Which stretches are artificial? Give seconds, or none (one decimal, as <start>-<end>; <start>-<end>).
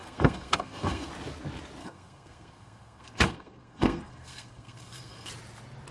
0.0-1.1; 1.8-5.3